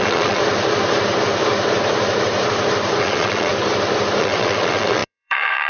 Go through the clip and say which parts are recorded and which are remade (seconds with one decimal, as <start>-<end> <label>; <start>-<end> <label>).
0.0-0.4 remade; 0.4-3.0 recorded; 3.0-3.5 remade; 3.5-4.2 recorded; 4.2-5.7 remade